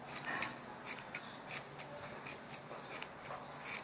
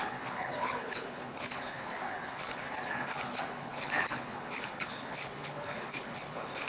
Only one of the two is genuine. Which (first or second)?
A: first